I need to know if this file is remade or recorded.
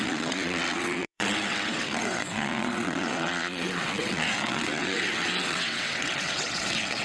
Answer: remade